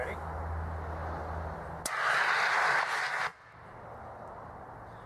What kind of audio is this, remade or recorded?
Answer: recorded